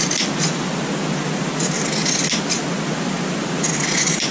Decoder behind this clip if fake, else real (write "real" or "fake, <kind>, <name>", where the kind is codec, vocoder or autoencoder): real